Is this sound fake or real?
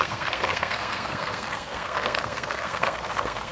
fake